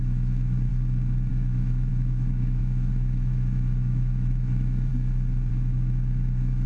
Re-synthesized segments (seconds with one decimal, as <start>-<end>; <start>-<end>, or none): 0.0-0.7; 1.3-4.9; 5.5-6.7